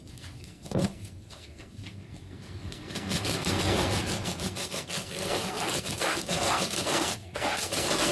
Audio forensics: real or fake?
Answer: fake